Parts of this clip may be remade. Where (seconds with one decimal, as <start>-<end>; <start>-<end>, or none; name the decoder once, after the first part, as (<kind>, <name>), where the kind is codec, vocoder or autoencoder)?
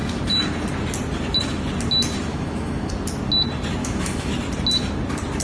2.3-2.9 (autoencoder, DAC-VAE); 3.8-4.3